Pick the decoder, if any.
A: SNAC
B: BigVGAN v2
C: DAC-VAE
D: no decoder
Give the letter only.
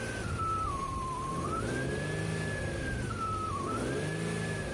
D